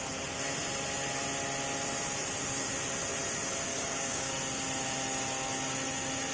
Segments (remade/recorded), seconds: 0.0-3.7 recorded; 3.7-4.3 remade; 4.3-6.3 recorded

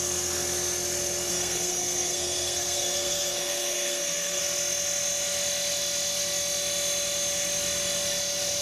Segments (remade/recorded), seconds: 0.0-1.3 recorded; 1.3-4.4 remade; 4.4-8.6 recorded

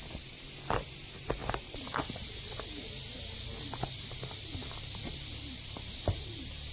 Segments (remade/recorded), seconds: 0.0-6.7 recorded

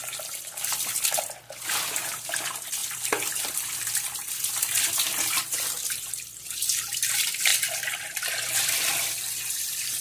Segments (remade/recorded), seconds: 0.0-10.0 remade

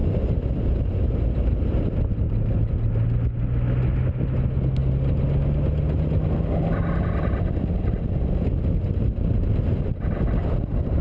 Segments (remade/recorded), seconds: 0.0-11.0 recorded

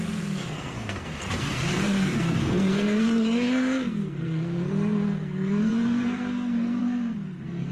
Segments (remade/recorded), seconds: 0.0-7.7 remade

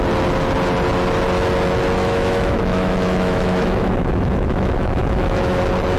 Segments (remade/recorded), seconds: 0.0-2.0 recorded; 2.0-5.6 remade; 5.6-6.0 recorded

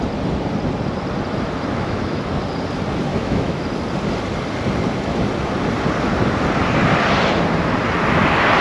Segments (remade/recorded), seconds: 0.0-1.7 recorded; 1.7-2.3 remade; 2.3-3.1 recorded; 3.1-3.6 remade; 3.6-8.6 recorded